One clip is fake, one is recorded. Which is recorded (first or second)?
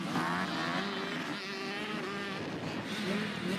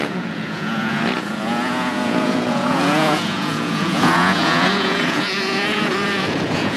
first